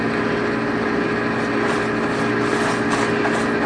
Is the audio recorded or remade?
recorded